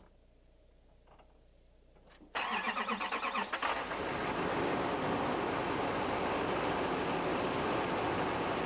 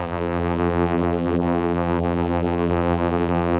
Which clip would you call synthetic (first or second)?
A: second